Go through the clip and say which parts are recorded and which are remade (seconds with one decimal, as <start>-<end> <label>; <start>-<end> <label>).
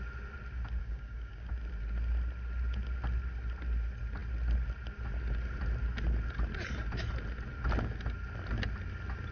0.0-0.8 recorded; 0.8-1.5 remade; 1.5-9.3 recorded